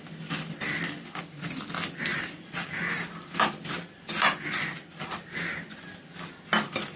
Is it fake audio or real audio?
real